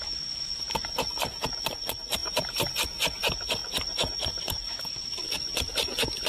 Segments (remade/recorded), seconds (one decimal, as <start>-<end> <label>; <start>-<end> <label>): 0.0-2.2 recorded; 2.2-2.7 remade; 2.7-6.3 recorded